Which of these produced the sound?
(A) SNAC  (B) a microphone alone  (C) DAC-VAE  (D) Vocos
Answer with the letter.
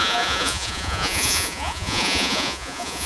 D